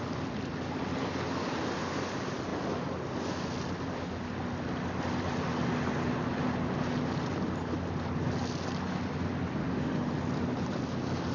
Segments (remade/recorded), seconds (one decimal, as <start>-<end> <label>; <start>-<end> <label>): 0.0-9.6 recorded; 9.6-10.1 remade; 10.1-11.3 recorded